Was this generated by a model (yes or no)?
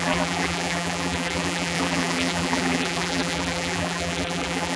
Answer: yes